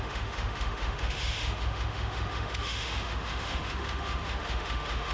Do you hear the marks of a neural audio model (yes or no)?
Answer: yes